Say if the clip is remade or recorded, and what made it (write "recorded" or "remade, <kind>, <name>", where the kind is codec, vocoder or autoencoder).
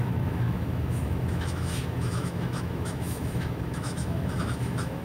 remade, autoencoder, DAC-VAE